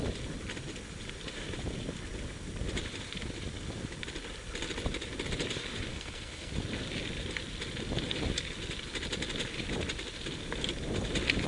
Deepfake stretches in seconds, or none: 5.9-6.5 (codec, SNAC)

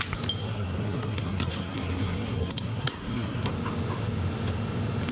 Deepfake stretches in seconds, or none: 0.4-3.5 (codec, SNAC)